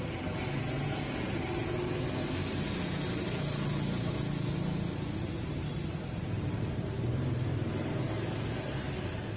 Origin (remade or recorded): recorded